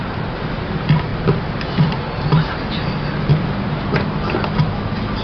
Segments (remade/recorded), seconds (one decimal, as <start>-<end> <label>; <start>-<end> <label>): 0.0-5.2 recorded